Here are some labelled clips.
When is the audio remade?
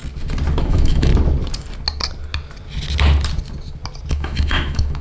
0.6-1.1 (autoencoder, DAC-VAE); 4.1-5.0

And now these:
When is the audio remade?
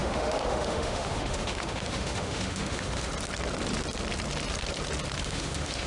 0.0-3.1 (autoencoder, DAC-VAE); 5.2-5.9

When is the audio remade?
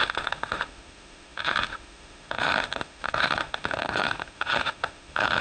0.0-5.4 (autoencoder, DAC-VAE)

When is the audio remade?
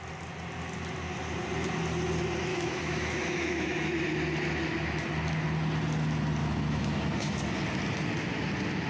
2.5-4.0 (autoencoder, DAC-VAE); 6.4-7.4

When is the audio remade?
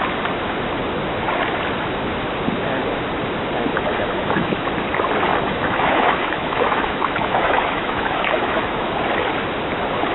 3.7-4.7 (autoencoder, DAC-VAE); 5.3-8.9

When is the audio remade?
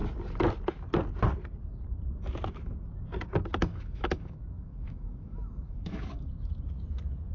3.5-6.5 (autoencoder, DAC-VAE)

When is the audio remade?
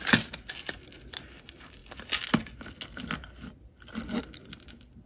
none